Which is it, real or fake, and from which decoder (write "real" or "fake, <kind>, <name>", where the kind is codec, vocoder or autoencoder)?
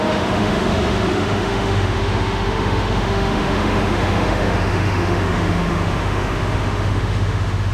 fake, autoencoder, DAC-VAE